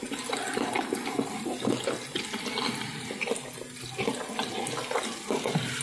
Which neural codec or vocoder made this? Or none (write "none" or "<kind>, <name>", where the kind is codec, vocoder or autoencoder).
none